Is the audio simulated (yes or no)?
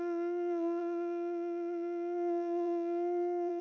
yes